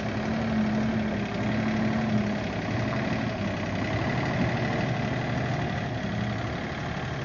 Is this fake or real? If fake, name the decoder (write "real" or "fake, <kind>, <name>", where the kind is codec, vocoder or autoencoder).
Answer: real